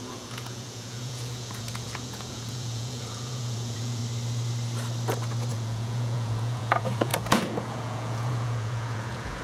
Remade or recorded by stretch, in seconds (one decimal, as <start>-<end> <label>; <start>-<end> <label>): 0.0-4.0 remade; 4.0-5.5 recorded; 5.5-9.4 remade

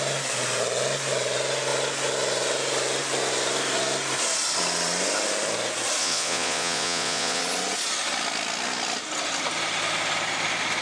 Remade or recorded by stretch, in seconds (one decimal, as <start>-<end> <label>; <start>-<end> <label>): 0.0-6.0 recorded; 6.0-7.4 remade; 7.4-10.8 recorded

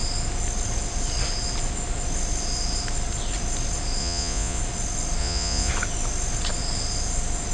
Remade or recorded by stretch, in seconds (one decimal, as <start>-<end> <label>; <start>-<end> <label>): 0.0-4.0 recorded; 4.0-4.6 remade; 4.6-5.2 recorded; 5.2-5.7 remade; 5.7-7.5 recorded